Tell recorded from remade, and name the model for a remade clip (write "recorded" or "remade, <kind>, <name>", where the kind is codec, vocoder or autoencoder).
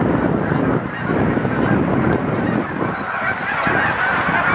recorded